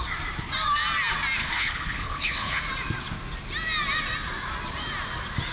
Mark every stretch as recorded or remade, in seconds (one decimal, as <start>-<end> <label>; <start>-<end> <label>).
0.0-1.4 recorded; 1.4-2.6 remade; 2.6-5.5 recorded